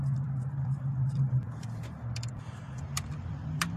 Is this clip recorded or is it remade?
remade